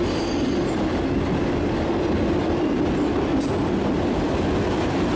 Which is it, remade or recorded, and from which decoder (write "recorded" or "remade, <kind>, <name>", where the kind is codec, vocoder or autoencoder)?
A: recorded